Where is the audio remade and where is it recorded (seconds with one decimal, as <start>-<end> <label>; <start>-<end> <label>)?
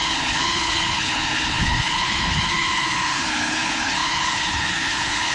0.0-5.3 remade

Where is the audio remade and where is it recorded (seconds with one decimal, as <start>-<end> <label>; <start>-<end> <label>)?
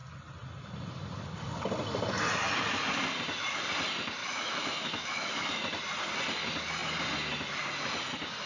0.0-4.2 recorded; 4.2-5.6 remade; 5.6-8.5 recorded